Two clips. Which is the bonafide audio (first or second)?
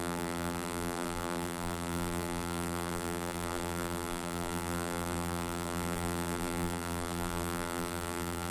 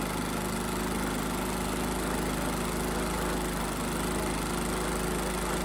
second